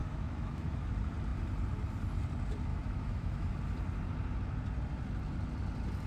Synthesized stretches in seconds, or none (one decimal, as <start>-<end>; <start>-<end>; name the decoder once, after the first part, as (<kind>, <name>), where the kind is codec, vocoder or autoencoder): 0.0-0.9 (autoencoder, DAC-VAE); 2.7-3.5